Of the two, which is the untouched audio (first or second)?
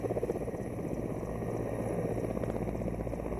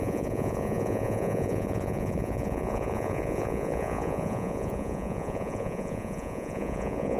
first